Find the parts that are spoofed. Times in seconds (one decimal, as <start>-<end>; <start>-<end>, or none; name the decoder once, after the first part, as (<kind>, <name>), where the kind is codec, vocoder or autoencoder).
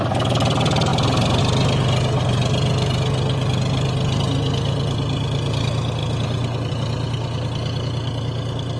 none